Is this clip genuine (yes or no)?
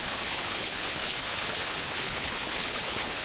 no